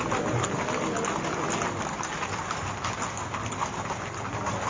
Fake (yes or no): no